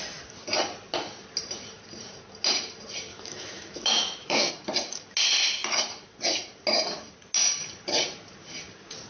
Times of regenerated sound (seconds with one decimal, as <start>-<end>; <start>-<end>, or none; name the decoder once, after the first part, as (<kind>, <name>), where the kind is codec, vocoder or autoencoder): 3.1-4.5 (autoencoder, DAC-VAE)